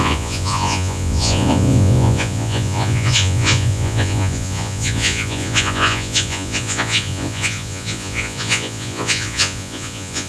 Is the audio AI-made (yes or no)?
yes